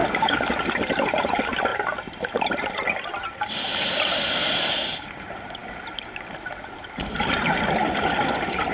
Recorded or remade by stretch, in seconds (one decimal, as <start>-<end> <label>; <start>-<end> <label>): 0.0-0.5 remade; 0.5-8.7 recorded